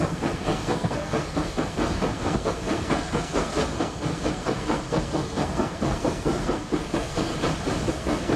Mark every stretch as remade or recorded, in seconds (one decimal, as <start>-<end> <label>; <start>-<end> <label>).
0.0-7.3 remade; 7.3-7.9 recorded; 7.9-8.4 remade